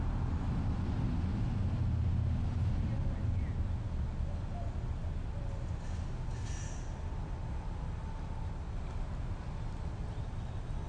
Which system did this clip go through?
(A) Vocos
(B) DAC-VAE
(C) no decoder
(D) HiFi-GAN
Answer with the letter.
C